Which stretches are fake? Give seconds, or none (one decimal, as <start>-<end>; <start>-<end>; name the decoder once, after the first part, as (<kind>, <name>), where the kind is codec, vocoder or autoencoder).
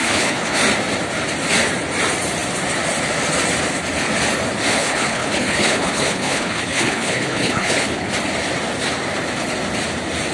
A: 0.0-0.6 (codec, HILCodec); 4.7-8.1